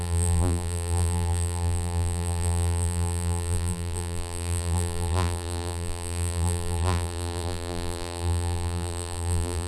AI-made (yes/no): yes